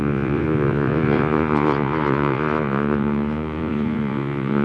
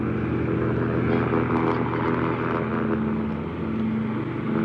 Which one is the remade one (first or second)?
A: first